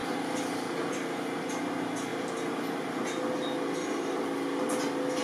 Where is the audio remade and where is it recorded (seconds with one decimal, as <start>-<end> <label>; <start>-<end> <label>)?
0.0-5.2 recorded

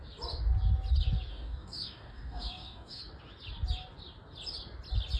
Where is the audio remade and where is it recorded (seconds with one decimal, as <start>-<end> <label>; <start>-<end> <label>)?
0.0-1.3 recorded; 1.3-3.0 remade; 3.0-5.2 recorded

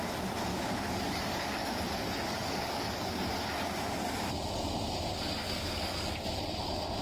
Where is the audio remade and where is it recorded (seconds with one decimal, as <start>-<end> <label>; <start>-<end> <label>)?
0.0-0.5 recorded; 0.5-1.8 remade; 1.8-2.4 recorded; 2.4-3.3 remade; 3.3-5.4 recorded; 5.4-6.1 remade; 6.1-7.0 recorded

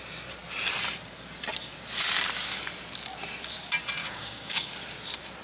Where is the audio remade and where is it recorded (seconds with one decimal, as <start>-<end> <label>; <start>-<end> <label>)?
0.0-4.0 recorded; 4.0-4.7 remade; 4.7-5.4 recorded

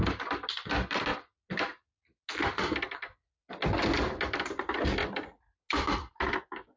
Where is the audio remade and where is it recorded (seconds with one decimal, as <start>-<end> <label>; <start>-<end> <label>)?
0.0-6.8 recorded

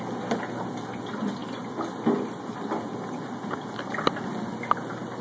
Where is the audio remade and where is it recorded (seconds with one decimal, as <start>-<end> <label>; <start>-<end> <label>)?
0.0-5.2 recorded

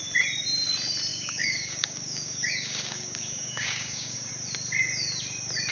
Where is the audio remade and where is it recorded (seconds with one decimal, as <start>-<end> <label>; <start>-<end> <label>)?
0.0-1.1 recorded; 1.1-4.3 remade; 4.3-5.7 recorded